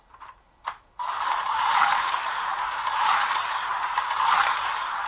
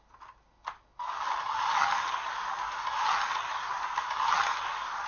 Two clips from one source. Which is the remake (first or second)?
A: first